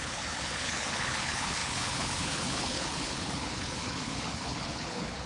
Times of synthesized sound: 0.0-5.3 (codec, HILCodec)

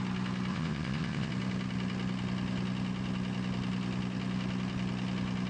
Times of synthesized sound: 0.5-1.3 (vocoder, Vocos)

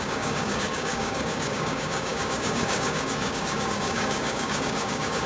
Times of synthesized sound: 0.0-5.3 (codec, DAC)

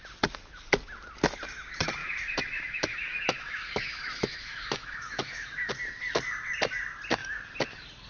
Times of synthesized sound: 2.0-5.7 (autoencoder, DAC-VAE)